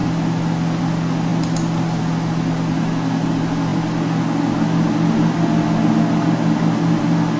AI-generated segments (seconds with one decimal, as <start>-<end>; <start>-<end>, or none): none